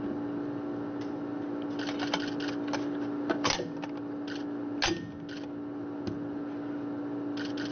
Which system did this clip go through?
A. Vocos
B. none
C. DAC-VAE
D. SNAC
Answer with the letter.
B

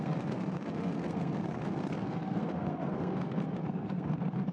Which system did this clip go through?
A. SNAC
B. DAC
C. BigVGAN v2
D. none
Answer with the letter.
A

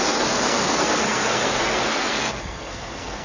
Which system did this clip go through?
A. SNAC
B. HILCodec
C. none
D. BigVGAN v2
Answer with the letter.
A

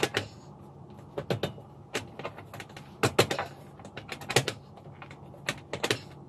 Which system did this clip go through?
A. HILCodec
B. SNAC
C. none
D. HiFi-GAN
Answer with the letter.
C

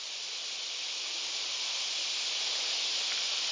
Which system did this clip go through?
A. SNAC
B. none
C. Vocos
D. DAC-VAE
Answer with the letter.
B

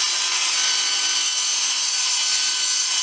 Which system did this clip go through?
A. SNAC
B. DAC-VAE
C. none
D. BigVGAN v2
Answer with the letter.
C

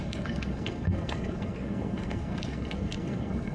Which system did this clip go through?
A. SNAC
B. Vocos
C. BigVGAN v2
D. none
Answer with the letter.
A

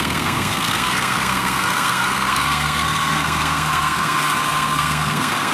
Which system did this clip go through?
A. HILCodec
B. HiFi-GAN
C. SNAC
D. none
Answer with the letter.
C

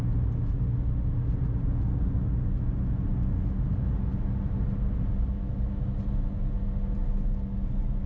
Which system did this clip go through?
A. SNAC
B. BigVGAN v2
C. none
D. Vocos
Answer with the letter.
C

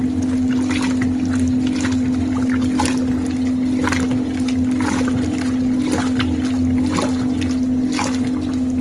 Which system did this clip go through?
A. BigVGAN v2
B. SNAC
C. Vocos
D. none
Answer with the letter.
D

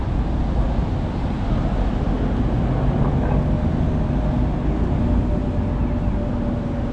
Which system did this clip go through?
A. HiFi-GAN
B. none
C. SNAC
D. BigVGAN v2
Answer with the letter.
B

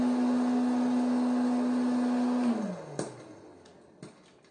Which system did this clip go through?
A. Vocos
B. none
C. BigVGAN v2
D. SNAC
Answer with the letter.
B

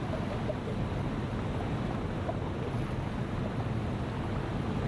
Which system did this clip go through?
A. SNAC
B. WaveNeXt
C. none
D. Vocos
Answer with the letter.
C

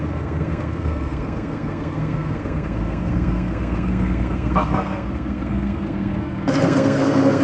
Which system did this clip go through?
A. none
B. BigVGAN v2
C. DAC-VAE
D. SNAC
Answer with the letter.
D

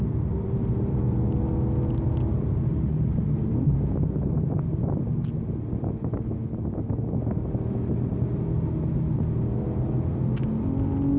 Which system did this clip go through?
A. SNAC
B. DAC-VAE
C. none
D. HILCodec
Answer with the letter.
C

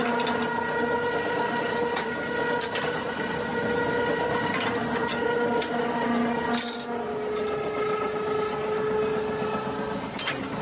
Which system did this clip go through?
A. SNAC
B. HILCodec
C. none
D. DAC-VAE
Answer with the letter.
C